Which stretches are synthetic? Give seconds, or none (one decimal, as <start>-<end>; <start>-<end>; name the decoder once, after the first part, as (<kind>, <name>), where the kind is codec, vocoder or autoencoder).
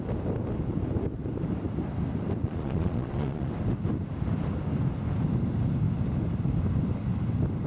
2.4-3.5 (vocoder, Vocos)